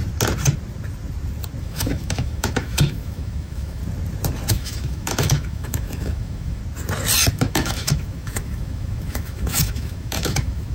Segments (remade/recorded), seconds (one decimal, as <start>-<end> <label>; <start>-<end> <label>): 0.0-1.6 recorded; 1.6-3.8 remade; 3.8-4.5 recorded; 4.5-6.6 remade; 6.6-7.3 recorded; 7.3-10.7 remade